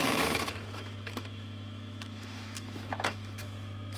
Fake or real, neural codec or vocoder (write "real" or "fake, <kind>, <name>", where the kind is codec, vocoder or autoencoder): fake, autoencoder, DAC-VAE